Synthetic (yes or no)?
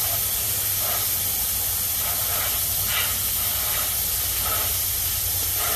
no